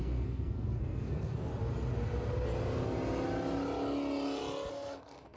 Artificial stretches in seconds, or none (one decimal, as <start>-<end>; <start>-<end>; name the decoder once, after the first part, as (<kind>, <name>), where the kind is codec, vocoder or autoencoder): 0.0-1.5 (codec, SNAC); 4.7-5.4